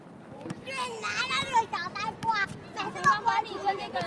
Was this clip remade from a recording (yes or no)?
no